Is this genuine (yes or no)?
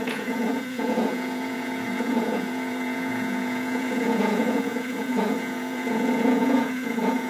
no